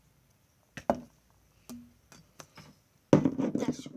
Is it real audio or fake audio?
real